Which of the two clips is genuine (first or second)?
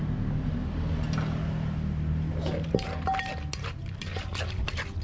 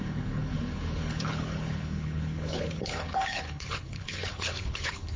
first